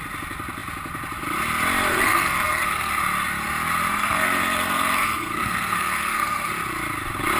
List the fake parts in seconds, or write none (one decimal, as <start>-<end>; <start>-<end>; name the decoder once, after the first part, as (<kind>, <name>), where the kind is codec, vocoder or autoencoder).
1.9-2.9 (codec, SNAC); 3.9-6.5